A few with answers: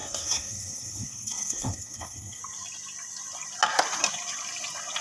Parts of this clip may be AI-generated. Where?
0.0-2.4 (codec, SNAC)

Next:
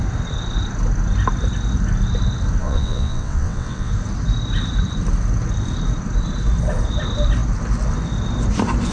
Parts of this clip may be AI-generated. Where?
2.6-3.9 (vocoder, WaveNeXt)